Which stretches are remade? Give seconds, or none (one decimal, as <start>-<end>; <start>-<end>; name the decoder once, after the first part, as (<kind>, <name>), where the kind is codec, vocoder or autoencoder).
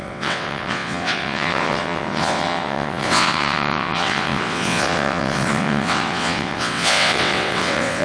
0.0-8.0 (vocoder, WaveNeXt)